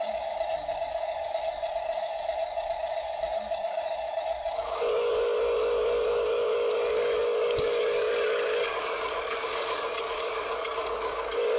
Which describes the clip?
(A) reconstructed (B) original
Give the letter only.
A